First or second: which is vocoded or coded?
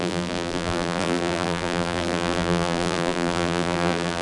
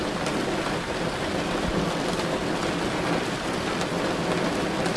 first